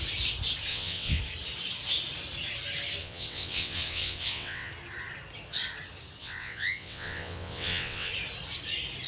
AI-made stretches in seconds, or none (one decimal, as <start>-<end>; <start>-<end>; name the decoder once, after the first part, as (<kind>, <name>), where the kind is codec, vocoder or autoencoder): 0.7-1.2 (vocoder, WaveNeXt); 3.0-4.7; 6.2-8.1